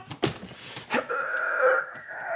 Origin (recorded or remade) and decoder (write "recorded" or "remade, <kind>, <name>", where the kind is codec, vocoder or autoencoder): recorded